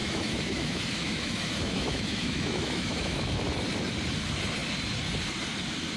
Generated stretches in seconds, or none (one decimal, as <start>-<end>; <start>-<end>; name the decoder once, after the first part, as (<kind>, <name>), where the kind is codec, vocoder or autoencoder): 0.0-3.6 (autoencoder, DAC-VAE)